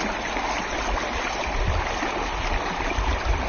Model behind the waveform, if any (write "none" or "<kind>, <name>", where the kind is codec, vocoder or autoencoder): none